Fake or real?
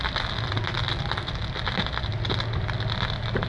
real